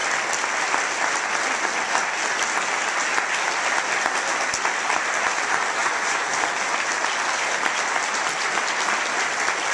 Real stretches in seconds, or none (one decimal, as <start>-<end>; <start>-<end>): 0.0-5.8; 6.3-9.7